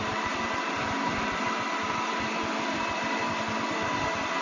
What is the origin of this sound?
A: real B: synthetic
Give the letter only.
B